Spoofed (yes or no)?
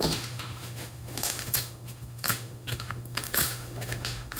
yes